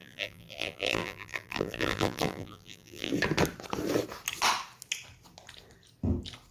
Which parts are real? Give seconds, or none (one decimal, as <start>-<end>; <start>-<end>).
3.1-6.5